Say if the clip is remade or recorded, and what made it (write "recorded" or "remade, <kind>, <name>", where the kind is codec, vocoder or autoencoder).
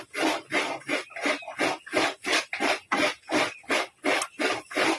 recorded